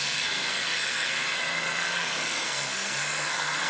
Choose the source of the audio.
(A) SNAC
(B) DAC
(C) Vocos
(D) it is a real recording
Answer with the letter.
A